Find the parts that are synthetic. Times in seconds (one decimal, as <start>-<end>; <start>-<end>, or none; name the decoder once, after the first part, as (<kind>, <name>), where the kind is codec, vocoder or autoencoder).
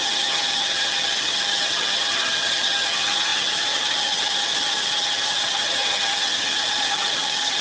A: 0.0-7.6 (vocoder, HiFi-GAN)